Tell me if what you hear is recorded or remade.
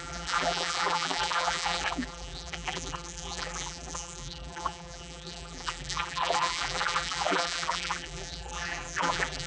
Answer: remade